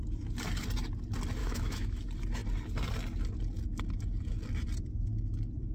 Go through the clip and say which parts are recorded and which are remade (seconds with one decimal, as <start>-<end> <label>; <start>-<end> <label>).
0.0-1.4 recorded; 1.4-2.0 remade; 2.0-5.7 recorded